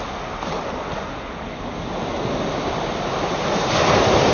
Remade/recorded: recorded